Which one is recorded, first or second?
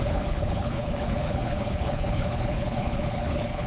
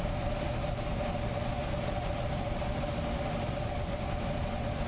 second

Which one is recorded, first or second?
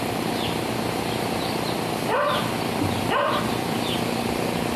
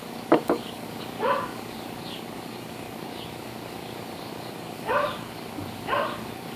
first